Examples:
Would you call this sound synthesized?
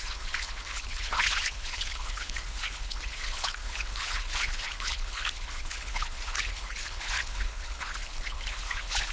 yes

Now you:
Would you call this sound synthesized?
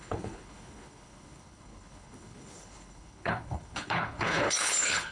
yes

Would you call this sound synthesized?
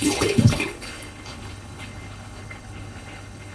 yes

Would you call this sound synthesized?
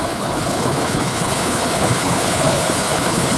yes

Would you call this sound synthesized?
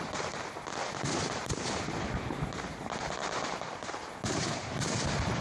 no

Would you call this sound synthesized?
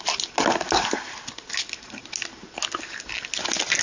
no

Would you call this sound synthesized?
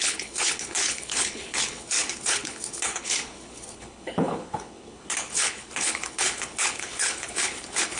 yes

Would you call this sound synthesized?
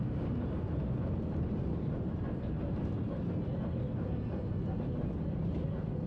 no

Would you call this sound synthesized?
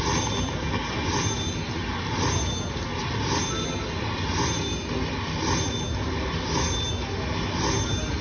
no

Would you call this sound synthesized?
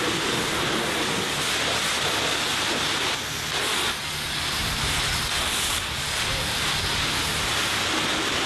no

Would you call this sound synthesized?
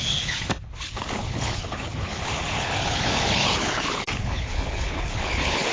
yes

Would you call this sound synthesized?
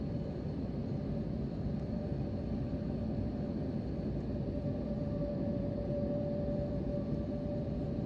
no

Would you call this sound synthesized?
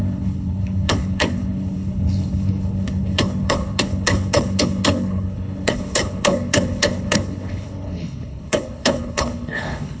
yes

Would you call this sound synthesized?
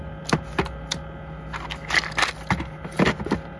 no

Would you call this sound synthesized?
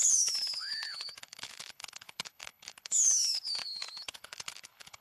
yes